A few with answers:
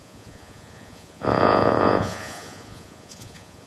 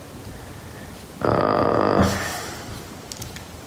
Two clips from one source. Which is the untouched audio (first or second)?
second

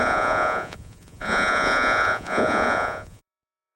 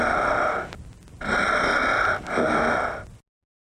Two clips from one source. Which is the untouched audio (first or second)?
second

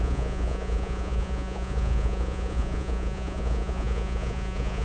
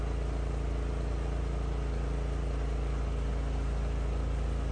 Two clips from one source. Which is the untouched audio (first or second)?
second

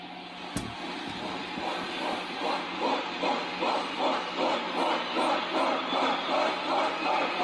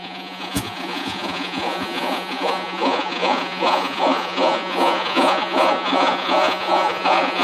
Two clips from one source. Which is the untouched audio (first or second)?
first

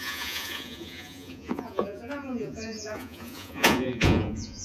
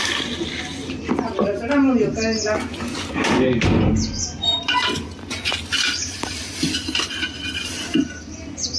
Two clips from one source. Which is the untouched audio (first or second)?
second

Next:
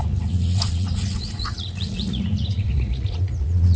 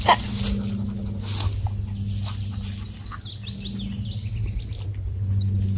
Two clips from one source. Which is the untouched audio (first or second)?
second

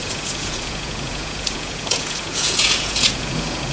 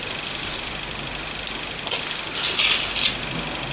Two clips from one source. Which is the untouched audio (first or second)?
second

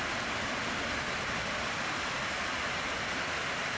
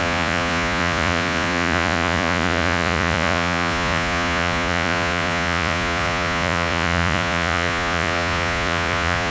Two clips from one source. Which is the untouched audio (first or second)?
first